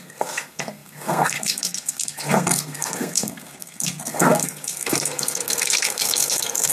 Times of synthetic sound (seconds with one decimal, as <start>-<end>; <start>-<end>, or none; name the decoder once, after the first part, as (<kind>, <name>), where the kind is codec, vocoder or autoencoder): 0.0-6.7 (codec, SNAC)